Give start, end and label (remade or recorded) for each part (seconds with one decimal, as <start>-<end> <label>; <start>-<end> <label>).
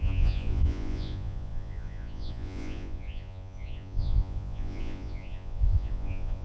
0.0-6.4 remade